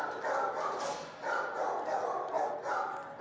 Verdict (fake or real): real